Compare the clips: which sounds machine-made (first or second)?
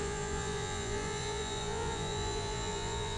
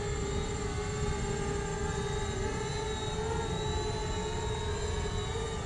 first